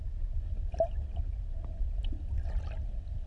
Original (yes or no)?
yes